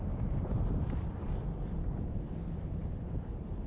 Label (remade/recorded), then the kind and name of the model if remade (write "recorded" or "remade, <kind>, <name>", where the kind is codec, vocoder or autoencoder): remade, vocoder, BigVGAN v2